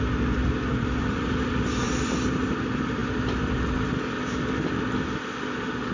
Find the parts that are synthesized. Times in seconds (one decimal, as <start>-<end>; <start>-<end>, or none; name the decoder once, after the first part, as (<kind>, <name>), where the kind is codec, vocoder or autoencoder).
0.7-2.3 (vocoder, BigVGAN v2)